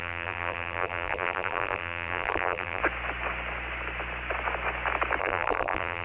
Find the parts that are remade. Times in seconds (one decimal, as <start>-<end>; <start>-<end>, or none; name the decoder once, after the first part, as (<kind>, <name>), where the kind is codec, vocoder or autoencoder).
0.0-2.8 (vocoder, BigVGAN v2); 5.2-6.0